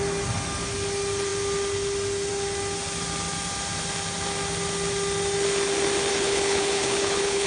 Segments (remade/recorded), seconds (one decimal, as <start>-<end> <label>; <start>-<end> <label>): 0.0-6.1 recorded; 6.1-7.5 remade